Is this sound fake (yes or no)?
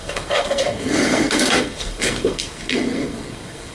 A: yes